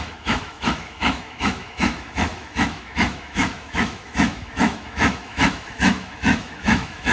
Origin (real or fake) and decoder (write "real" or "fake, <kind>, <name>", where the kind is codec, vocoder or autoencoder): fake, autoencoder, DAC-VAE